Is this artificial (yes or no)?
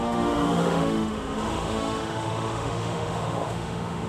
yes